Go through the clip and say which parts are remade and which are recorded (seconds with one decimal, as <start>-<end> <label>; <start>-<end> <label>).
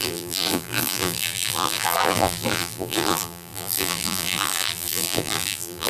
0.0-5.9 remade